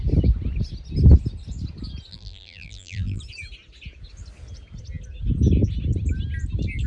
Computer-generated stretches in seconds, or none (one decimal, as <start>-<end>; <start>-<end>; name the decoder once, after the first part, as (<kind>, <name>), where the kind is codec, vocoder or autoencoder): 2.1-3.2 (vocoder, BigVGAN v2)